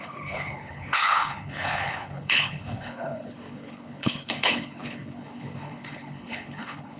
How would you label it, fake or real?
fake